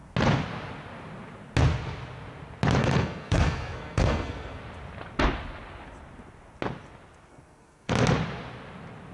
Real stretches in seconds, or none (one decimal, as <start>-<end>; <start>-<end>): 0.0-2.8; 4.6-7.3; 7.9-9.1

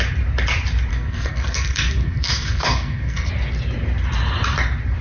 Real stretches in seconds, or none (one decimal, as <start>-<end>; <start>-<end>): 0.0-0.9; 3.3-5.0